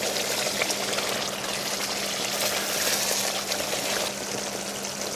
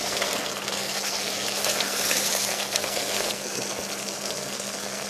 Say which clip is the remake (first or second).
second